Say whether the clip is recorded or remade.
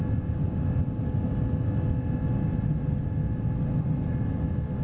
recorded